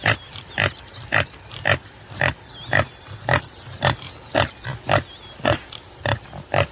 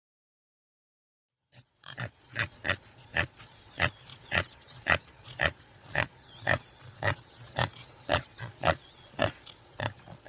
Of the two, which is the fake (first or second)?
second